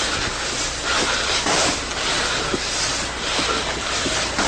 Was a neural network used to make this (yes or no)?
no